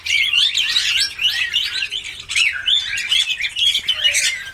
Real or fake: real